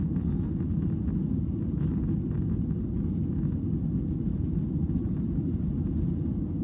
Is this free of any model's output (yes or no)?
yes